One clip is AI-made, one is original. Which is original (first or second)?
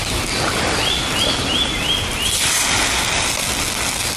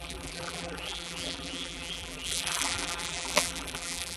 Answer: first